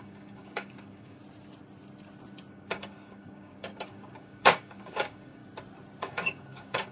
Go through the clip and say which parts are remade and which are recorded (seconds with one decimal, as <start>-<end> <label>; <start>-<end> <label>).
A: 0.0-1.2 remade; 1.2-2.5 recorded; 2.5-5.4 remade; 5.4-6.0 recorded; 6.0-6.9 remade